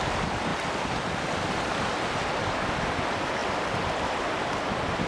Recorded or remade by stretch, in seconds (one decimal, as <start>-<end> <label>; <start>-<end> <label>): 0.0-5.1 recorded